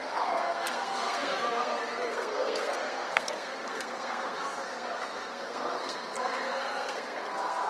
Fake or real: fake